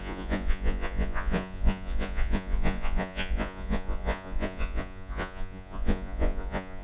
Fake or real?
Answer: fake